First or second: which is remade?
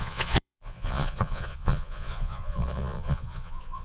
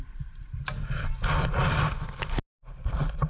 first